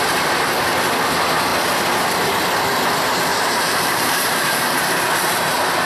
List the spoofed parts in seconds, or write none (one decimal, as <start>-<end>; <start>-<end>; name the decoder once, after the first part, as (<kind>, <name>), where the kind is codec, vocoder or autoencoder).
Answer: 3.3-5.1 (vocoder, BigVGAN v2)